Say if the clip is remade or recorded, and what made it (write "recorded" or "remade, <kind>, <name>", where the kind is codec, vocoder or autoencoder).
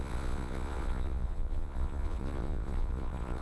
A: remade, vocoder, Vocos